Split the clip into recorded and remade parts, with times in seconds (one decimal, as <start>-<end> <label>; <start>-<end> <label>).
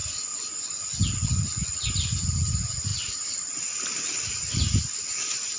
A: 0.0-5.6 recorded